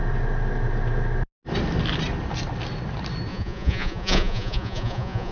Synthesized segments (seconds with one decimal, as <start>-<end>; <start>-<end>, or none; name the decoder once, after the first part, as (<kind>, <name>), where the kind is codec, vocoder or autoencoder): 3.3-5.3 (vocoder, Vocos)